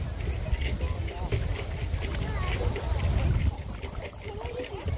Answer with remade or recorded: recorded